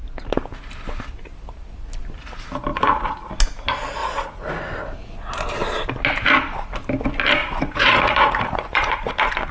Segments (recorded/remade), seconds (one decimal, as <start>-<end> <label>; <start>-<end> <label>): 0.0-2.7 recorded; 2.7-3.3 remade; 3.3-4.0 recorded; 4.0-4.6 remade; 4.6-7.4 recorded; 7.4-9.1 remade; 9.1-9.5 recorded